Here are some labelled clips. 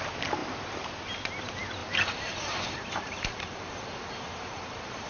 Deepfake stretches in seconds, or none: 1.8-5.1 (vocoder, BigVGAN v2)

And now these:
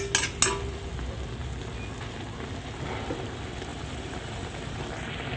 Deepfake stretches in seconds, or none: 3.7-4.8 (vocoder, BigVGAN v2)